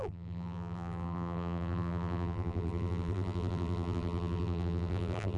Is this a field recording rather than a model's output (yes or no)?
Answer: no